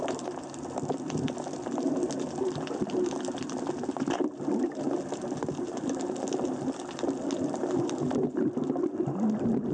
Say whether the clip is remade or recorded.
recorded